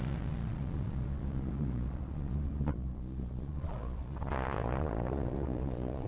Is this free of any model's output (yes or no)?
no